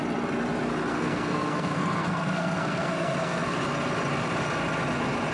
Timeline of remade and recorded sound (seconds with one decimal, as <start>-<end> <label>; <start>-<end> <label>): 0.0-0.9 recorded; 0.9-3.6 remade; 3.6-5.3 recorded